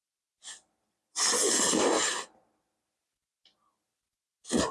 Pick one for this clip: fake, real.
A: real